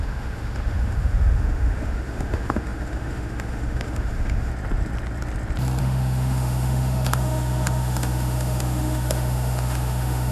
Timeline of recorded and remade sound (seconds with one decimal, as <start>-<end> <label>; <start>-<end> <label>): 0.0-4.5 remade; 4.5-5.8 recorded; 5.8-10.3 remade